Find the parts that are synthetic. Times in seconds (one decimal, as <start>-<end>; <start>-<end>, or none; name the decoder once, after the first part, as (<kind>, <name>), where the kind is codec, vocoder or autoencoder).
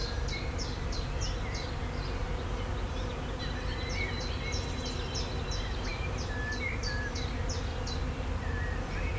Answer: 7.7-9.2 (vocoder, BigVGAN v2)